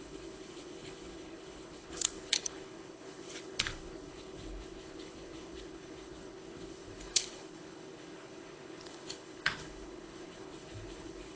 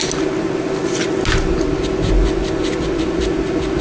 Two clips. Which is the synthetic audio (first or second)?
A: first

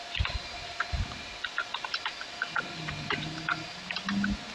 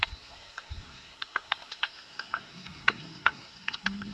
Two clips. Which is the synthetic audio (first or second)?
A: second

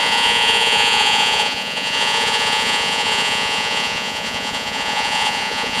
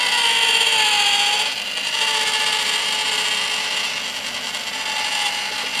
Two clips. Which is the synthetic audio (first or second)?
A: first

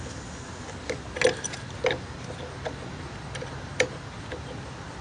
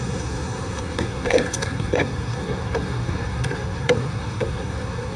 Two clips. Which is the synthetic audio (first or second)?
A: second